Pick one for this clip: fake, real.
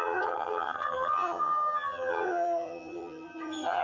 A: fake